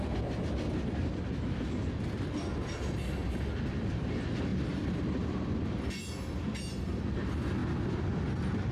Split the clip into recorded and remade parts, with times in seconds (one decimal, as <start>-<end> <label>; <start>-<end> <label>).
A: 0.0-4.5 recorded; 4.5-5.7 remade; 5.7-7.6 recorded; 7.6-8.7 remade